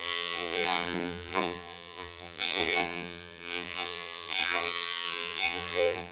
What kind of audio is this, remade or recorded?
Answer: remade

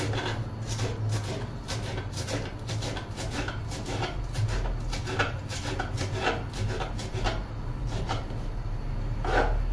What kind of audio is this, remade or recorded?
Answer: recorded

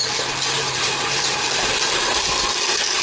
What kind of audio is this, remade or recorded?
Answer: remade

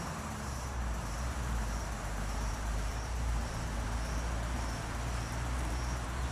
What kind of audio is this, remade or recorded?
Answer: remade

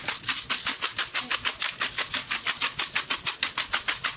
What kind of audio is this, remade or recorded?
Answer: remade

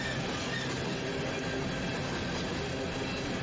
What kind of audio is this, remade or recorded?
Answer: recorded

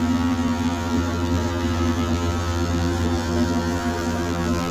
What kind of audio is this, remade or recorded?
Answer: remade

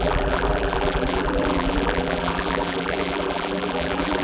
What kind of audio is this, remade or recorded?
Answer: remade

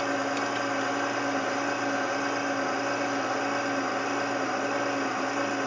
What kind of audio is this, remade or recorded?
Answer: recorded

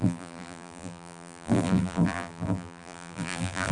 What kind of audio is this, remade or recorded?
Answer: remade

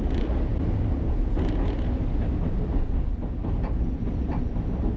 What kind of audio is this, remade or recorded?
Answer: recorded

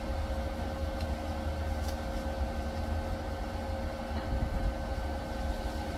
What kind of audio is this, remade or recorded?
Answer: recorded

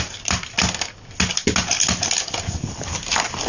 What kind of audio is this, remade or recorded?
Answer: recorded